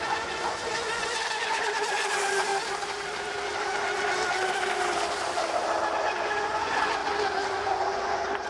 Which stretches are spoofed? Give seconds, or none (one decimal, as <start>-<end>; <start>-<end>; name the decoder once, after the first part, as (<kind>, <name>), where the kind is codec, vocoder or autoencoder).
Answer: 0.0-2.5 (vocoder, Vocos); 6.0-7.0; 7.5-8.5